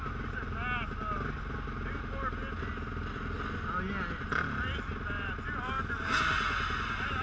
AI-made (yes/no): no